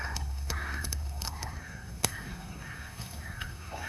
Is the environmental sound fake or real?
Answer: fake